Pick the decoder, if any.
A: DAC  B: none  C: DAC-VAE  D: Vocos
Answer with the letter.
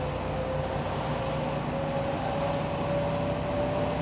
B